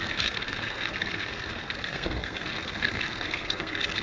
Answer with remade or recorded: remade